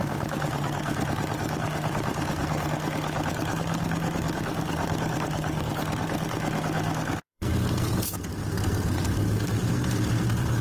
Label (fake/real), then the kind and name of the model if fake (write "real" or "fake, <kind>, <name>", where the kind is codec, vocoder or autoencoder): fake, codec, SNAC